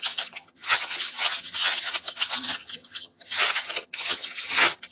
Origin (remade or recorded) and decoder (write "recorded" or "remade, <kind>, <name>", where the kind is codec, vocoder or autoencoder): remade, vocoder, HiFi-GAN